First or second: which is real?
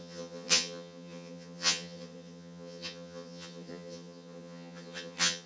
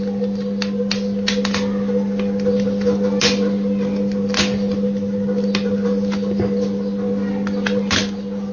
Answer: second